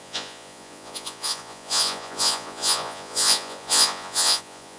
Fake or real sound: fake